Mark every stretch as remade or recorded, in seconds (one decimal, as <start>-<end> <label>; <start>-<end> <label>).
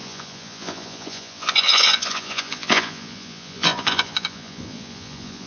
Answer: 0.0-5.5 remade